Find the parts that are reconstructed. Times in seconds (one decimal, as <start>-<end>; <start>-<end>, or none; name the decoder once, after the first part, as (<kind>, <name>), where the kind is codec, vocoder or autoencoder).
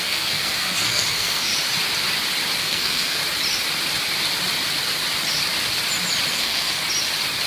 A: 0.0-1.5 (codec, SNAC); 2.6-3.2; 6.3-6.8